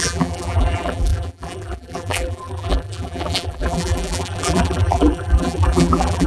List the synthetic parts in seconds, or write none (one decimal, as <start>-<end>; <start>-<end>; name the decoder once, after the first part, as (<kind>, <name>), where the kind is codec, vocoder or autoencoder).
0.0-6.3 (vocoder, BigVGAN v2)